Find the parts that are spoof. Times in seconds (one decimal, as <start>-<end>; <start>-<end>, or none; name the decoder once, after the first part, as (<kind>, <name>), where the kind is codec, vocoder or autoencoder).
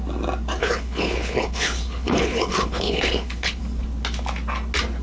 0.6-3.6 (codec, HILCodec)